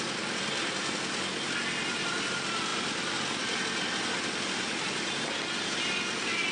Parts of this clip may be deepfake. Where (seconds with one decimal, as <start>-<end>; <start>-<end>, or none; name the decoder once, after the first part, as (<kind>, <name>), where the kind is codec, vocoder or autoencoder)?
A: none